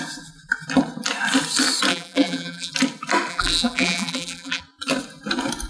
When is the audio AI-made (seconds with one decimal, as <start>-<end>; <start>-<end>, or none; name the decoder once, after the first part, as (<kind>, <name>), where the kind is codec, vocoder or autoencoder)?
1.9-2.7 (vocoder, BigVGAN v2); 3.3-4.6